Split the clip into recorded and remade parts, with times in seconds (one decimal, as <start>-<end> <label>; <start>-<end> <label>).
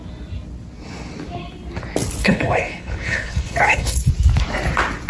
0.0-2.2 recorded; 2.2-4.1 remade; 4.1-5.1 recorded